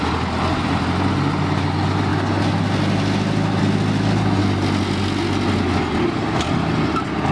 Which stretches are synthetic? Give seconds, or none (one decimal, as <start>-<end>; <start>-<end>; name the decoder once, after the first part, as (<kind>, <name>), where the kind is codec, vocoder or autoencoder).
none